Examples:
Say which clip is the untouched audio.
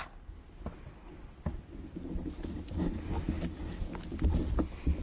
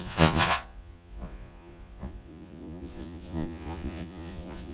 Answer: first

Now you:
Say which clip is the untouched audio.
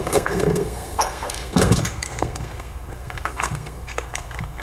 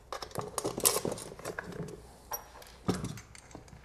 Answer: second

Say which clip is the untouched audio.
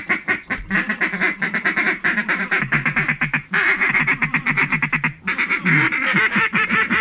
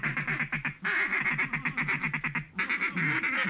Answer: second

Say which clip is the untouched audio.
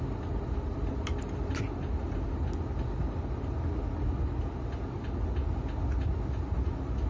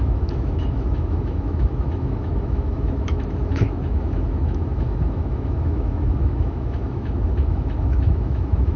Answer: first